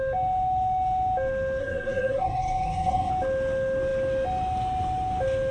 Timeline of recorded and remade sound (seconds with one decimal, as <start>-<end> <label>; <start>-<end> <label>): 0.0-1.6 recorded; 1.6-3.1 remade; 3.1-5.5 recorded